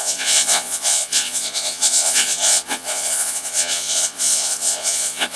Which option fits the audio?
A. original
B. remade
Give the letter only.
B